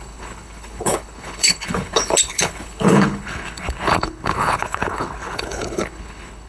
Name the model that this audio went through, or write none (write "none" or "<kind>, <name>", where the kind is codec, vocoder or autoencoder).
codec, HILCodec